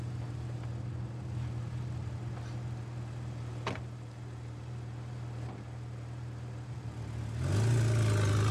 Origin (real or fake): real